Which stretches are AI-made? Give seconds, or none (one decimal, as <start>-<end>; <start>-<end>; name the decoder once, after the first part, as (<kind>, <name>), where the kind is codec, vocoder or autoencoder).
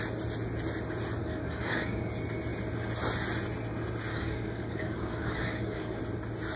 1.2-2.1 (codec, DAC); 4.1-6.0